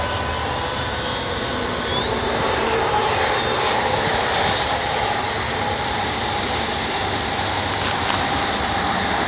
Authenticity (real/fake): real